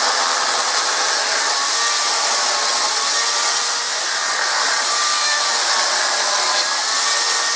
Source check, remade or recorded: recorded